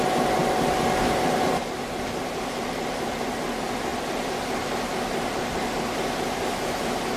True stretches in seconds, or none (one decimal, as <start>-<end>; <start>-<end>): 0.0-0.4; 3.3-7.2